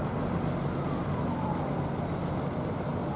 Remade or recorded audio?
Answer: recorded